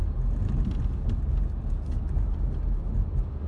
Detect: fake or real real